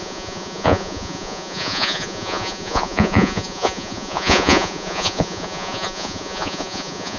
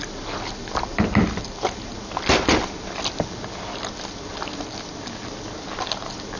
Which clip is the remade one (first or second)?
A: first